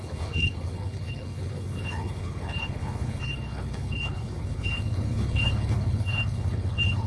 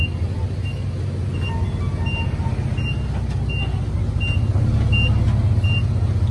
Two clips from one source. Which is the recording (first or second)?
second